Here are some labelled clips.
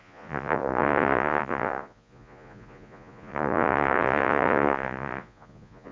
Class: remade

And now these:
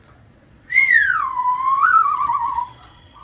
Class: remade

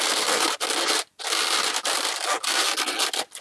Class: recorded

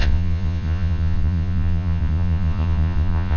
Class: remade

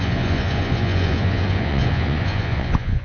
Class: remade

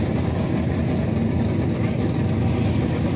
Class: recorded